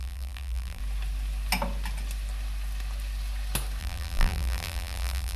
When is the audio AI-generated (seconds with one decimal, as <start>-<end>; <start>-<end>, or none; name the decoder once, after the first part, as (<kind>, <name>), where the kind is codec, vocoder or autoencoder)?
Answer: 0.0-0.8 (vocoder, BigVGAN v2); 3.8-5.4